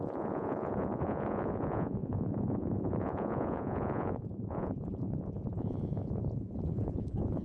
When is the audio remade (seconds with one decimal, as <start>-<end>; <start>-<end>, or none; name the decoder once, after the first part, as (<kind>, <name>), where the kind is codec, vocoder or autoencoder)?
0.0-7.4 (vocoder, Vocos)